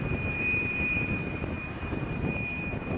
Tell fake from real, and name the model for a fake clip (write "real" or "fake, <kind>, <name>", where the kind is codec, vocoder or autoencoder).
fake, vocoder, BigVGAN v2